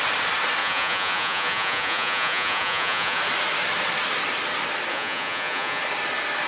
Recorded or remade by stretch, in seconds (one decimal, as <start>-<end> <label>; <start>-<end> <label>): 0.0-0.6 recorded; 0.6-3.2 remade; 3.2-4.9 recorded; 4.9-5.8 remade; 5.8-6.5 recorded